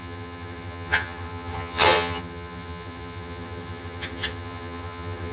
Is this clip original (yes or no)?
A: no